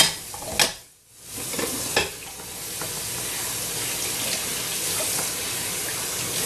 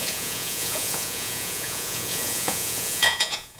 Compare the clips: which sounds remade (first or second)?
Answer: second